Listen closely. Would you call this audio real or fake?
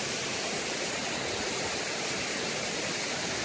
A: real